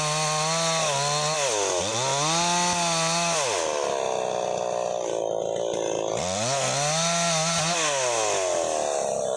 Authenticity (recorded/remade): recorded